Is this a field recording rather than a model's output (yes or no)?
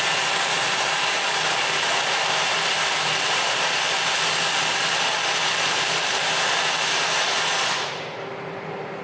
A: no